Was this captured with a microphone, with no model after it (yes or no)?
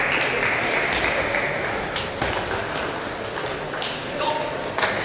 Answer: yes